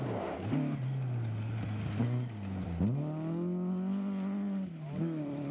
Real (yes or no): yes